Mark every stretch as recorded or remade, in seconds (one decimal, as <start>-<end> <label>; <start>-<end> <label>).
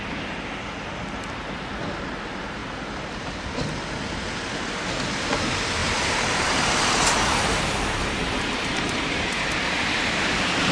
0.0-2.6 recorded; 2.6-3.3 remade; 3.3-5.8 recorded; 5.8-9.4 remade; 9.4-10.7 recorded